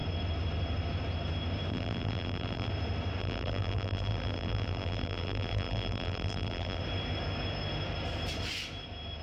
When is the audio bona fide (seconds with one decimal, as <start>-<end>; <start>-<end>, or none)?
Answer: 0.0-1.7; 2.7-3.2; 6.8-9.2